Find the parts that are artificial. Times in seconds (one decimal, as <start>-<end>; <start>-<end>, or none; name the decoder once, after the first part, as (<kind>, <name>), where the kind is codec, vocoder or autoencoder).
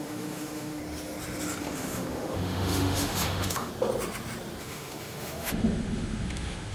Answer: 0.0-0.8 (autoencoder, DAC-VAE); 1.6-3.7; 4.6-6.7